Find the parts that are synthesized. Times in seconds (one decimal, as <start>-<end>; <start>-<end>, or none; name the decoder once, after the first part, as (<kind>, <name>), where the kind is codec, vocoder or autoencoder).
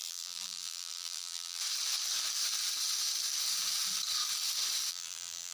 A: 0.0-1.6 (vocoder, BigVGAN v2); 4.9-5.5